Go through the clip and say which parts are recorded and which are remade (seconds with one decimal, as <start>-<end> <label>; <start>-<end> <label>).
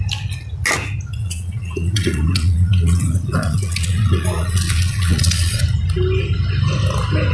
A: 0.0-1.2 recorded; 1.2-5.6 remade; 5.6-7.3 recorded